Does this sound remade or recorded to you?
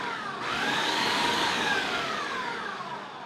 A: remade